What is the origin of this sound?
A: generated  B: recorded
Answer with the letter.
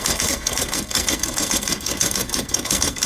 A